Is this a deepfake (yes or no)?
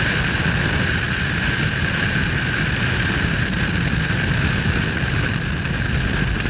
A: no